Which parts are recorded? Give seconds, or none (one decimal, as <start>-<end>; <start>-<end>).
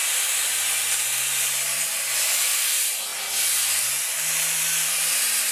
0.0-5.5